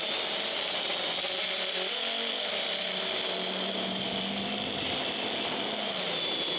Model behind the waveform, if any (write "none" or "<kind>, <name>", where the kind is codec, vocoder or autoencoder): none